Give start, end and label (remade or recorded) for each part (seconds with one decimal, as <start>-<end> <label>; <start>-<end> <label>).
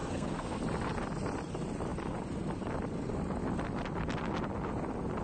0.0-0.6 remade; 0.6-5.2 recorded